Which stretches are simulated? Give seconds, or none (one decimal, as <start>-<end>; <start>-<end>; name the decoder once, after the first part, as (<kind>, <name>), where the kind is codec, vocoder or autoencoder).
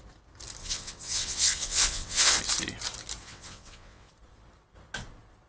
0.6-2.4 (vocoder, WaveNeXt); 3.2-4.1